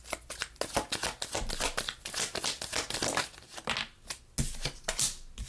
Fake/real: real